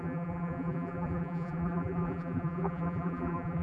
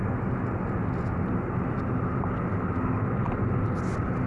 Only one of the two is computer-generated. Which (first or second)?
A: first